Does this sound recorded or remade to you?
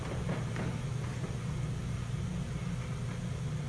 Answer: recorded